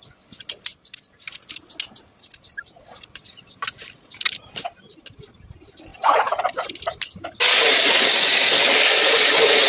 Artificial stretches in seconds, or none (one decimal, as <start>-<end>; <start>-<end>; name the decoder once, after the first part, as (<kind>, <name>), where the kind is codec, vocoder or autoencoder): none